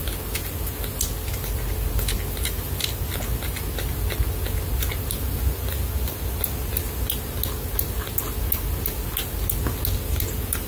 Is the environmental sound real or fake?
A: real